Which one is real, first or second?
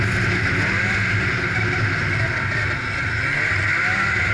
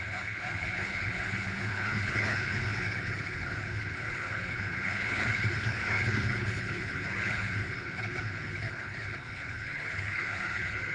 first